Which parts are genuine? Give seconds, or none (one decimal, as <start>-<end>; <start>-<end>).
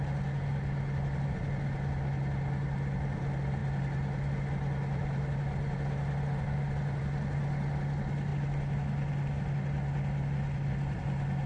0.0-11.5